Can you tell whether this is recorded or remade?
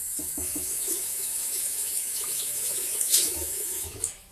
remade